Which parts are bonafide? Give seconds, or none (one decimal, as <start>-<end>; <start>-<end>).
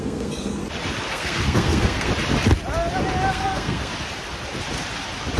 0.6-1.1; 2.1-3.3; 3.9-5.4